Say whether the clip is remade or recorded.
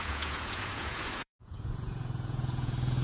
remade